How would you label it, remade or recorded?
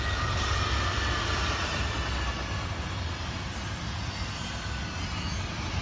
recorded